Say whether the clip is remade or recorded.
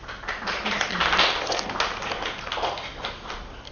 recorded